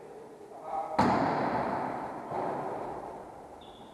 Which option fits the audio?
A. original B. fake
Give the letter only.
A